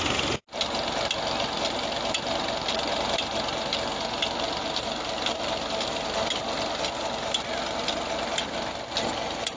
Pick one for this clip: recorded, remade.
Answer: recorded